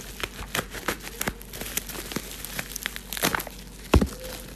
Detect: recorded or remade recorded